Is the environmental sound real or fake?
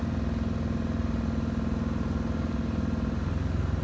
real